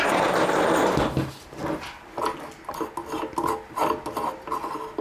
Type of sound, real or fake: real